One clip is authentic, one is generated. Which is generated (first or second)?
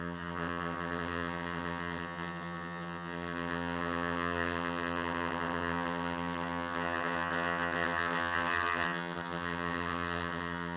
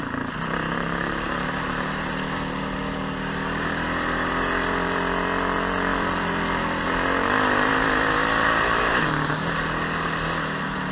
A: first